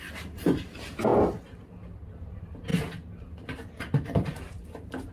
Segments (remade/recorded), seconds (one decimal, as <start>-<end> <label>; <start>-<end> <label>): 0.0-2.7 remade; 2.7-4.5 recorded; 4.5-5.1 remade